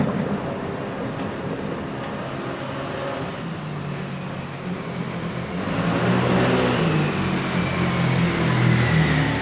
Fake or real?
real